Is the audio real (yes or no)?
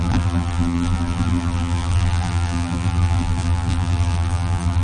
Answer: no